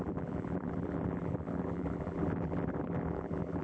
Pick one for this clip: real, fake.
fake